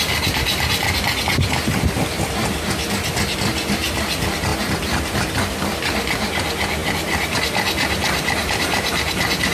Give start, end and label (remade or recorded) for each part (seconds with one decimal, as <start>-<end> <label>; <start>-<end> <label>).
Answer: 0.0-9.5 recorded